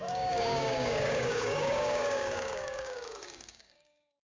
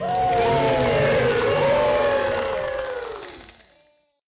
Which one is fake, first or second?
first